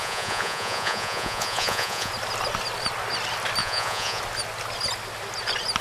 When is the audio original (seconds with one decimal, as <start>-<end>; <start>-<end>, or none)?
2.1-3.6; 4.2-5.8